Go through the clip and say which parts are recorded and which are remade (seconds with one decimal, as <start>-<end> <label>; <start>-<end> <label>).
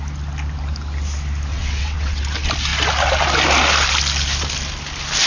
0.0-1.5 recorded; 1.5-2.2 remade; 2.2-5.3 recorded